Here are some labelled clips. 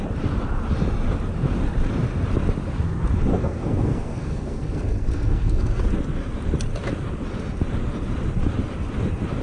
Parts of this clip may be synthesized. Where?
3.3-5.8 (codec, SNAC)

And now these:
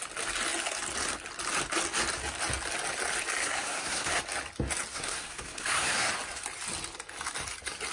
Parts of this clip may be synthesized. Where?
3.4-4.2 (codec, SNAC); 4.9-6.1

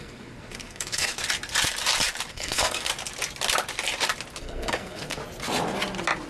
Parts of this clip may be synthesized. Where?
0.0-1.2 (codec, SNAC); 2.3-2.9; 4.4-5.2

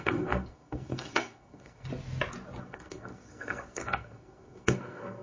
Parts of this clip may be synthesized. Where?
0.0-1.9 (codec, SNAC); 2.6-5.2

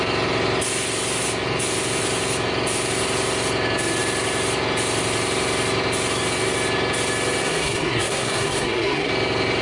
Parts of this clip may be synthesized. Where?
7.4-9.1 (codec, SNAC)